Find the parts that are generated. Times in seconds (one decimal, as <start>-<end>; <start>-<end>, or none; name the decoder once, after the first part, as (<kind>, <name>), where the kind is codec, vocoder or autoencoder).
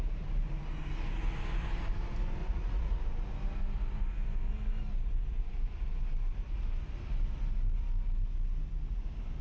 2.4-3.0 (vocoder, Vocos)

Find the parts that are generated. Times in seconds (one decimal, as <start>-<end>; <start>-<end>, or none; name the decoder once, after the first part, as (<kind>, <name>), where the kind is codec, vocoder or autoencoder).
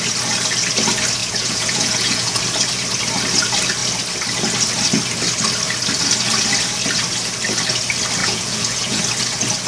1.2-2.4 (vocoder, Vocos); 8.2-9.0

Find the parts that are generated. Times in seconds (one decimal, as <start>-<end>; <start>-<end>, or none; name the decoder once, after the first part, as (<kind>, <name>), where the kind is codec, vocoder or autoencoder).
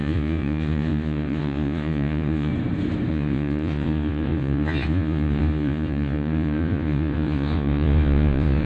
0.0-2.5 (vocoder, Vocos); 3.1-8.7